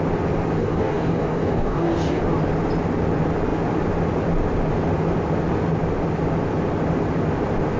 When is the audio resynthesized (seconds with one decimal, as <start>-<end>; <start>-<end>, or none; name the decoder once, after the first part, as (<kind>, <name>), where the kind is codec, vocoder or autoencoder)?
0.6-2.2 (codec, DAC)

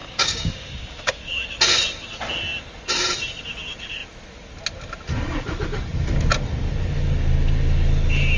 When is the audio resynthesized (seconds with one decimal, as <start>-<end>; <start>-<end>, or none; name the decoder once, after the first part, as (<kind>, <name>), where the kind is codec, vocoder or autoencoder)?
0.0-1.2 (codec, DAC)

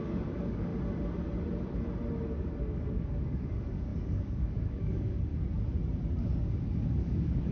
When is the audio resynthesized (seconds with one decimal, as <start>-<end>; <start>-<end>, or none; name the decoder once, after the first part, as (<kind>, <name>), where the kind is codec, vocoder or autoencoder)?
0.0-0.7 (codec, DAC); 2.3-5.3; 6.2-7.5

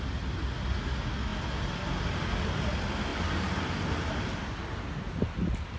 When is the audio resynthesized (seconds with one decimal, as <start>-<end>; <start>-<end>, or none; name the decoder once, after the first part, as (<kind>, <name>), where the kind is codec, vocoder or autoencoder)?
none

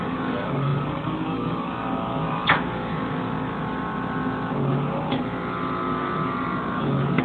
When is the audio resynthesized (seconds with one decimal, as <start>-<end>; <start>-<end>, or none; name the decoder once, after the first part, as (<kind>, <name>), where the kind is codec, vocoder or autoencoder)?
0.0-3.5 (codec, DAC)

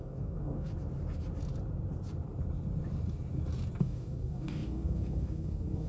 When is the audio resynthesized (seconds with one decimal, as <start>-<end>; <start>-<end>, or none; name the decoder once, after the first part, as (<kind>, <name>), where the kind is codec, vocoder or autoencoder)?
0.0-0.7 (codec, DAC); 3.8-5.9

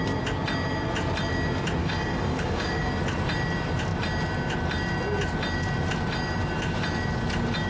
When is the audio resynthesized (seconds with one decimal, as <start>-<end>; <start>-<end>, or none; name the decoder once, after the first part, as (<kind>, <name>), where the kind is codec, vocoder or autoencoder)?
1.8-2.9 (codec, DAC)